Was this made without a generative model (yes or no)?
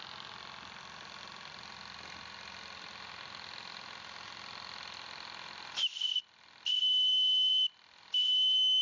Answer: yes